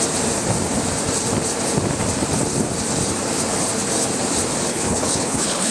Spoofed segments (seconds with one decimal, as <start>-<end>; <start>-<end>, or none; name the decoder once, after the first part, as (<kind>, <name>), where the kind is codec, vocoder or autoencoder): 4.7-5.7 (codec, HILCodec)